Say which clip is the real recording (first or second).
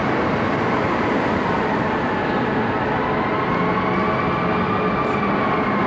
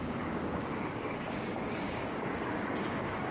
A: first